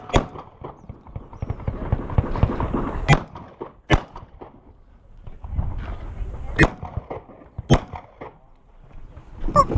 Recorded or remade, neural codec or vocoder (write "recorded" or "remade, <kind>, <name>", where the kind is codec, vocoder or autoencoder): recorded